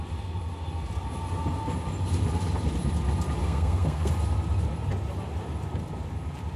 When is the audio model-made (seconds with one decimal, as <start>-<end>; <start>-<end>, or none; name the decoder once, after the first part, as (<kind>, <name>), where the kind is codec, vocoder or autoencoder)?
3.4-4.1 (codec, SNAC)